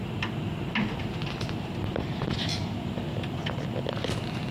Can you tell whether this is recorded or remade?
recorded